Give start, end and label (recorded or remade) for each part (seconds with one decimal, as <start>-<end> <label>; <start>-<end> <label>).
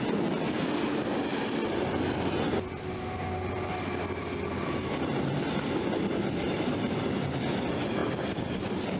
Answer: 0.0-9.0 recorded